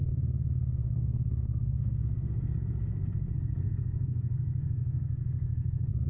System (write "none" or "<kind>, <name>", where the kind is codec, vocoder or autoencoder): codec, SNAC